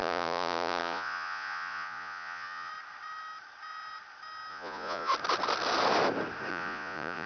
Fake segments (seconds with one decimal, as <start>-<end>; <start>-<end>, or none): 0.0-2.7; 4.5-5.1; 6.5-7.3